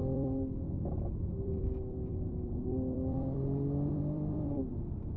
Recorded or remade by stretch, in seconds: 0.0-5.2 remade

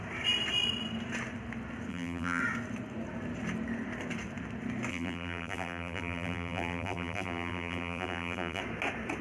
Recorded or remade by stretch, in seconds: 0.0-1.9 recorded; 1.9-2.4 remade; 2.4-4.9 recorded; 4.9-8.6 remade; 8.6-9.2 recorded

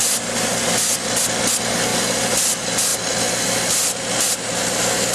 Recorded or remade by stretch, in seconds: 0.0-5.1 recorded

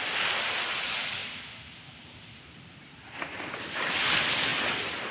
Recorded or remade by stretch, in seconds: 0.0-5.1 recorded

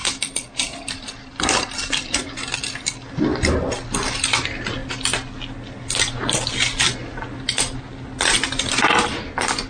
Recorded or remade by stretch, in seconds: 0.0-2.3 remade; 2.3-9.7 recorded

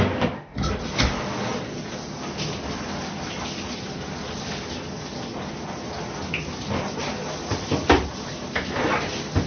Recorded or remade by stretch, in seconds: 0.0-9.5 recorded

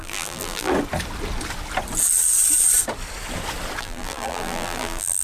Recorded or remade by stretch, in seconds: 0.0-0.7 remade; 0.7-3.8 recorded; 3.8-5.2 remade

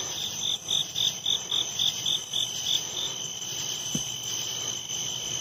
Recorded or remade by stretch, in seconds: 0.0-5.4 recorded